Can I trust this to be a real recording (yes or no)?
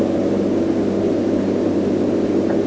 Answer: yes